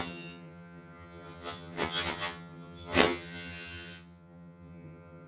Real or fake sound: fake